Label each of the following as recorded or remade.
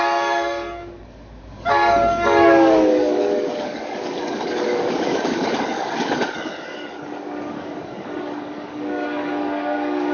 remade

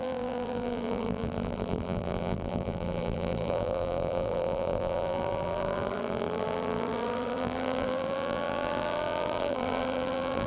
remade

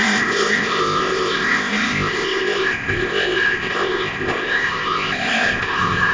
remade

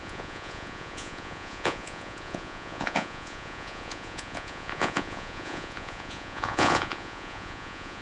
remade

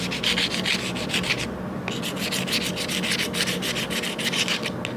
recorded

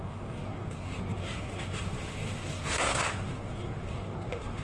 remade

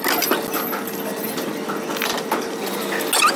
recorded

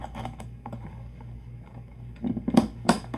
remade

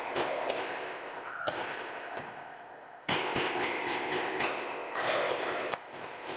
remade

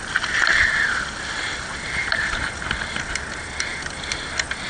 recorded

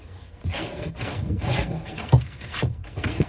remade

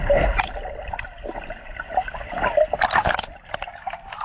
recorded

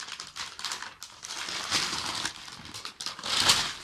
recorded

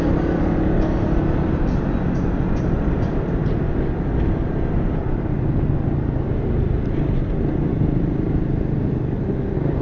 recorded